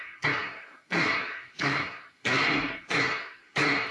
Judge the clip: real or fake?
fake